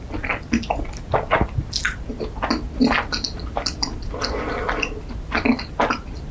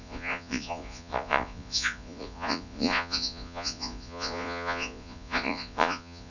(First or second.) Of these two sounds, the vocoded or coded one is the second